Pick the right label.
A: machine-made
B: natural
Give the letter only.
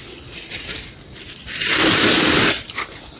A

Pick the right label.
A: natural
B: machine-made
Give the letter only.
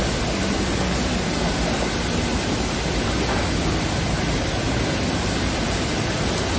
A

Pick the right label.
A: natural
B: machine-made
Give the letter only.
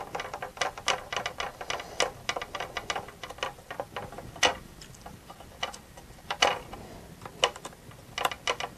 A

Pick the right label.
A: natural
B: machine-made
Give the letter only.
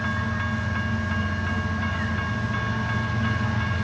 A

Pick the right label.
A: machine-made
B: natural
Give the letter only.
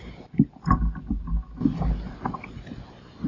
B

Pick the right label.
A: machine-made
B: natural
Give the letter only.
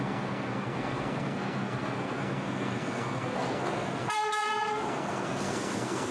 A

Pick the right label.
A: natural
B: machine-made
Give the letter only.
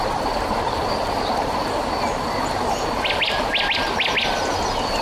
A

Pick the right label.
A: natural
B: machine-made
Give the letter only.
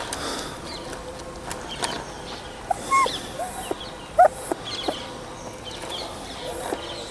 A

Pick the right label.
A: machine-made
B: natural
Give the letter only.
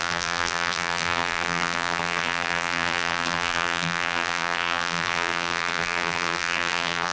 A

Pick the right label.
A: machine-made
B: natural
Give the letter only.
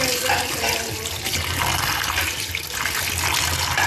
B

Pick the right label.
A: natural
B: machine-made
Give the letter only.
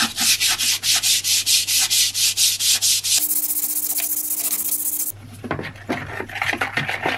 A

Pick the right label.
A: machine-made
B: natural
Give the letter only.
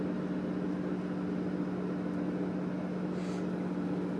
B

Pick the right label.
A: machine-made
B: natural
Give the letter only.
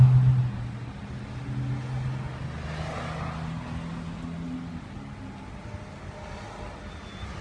B